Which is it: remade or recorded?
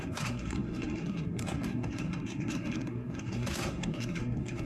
remade